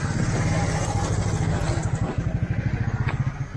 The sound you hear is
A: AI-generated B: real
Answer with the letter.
B